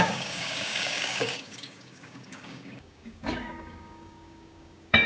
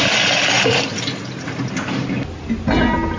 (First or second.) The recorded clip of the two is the second